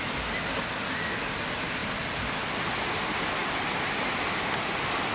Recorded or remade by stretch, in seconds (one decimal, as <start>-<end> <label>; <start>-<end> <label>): 0.0-1.8 recorded; 1.8-2.5 remade; 2.5-5.1 recorded